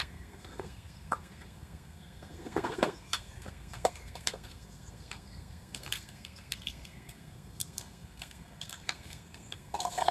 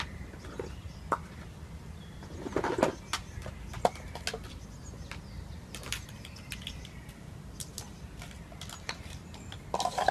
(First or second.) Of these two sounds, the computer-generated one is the first